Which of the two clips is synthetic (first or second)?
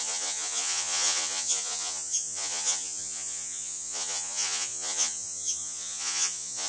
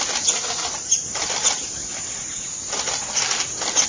first